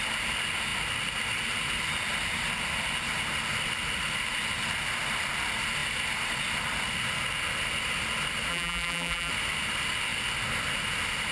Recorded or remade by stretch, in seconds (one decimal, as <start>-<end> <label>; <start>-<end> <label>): 0.0-8.5 recorded; 8.5-9.3 remade; 9.3-11.3 recorded